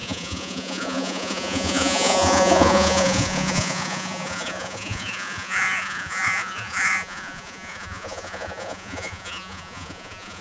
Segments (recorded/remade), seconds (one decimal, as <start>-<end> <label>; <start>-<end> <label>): 0.0-10.4 remade